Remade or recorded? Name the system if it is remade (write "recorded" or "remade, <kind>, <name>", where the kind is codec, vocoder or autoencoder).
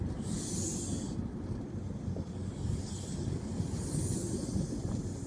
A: recorded